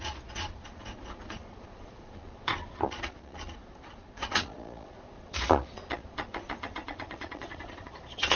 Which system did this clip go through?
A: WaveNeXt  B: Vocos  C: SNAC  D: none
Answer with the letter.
B